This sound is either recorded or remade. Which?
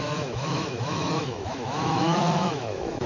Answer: remade